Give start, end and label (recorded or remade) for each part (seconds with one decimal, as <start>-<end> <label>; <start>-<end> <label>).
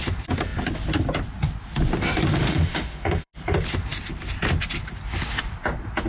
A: 0.0-2.4 recorded; 2.4-3.3 remade; 3.3-6.1 recorded